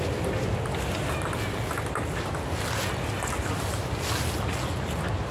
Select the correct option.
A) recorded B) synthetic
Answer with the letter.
A